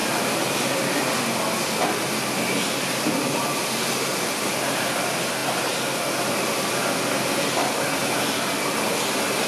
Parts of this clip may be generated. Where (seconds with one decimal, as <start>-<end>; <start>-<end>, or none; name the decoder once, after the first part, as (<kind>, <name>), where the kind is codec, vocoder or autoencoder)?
none